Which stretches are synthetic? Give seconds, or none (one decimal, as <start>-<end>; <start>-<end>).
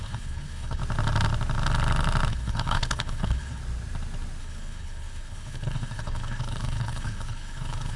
0.0-0.8; 2.3-3.6; 4.4-8.0